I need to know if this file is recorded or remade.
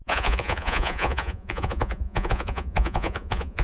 remade